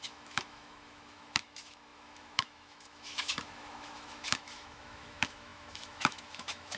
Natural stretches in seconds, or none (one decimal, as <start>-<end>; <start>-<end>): none